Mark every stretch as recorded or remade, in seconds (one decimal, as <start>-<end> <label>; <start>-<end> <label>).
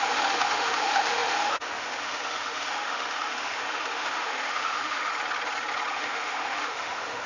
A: 0.0-5.1 remade; 5.1-5.9 recorded; 5.9-7.3 remade